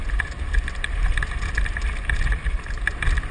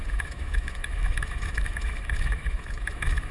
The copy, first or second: second